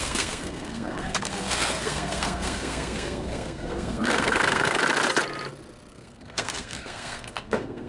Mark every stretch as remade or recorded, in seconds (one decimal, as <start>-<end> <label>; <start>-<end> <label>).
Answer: 0.0-4.8 remade; 4.8-5.9 recorded; 5.9-7.9 remade